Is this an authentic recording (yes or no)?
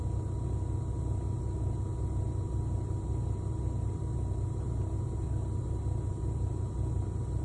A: yes